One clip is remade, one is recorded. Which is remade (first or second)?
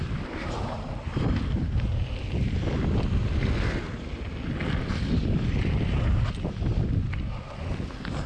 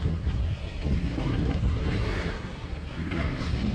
second